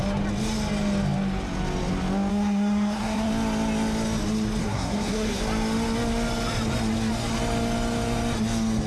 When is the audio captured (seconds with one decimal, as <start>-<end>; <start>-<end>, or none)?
0.0-2.3; 3.3-4.6; 5.4-8.9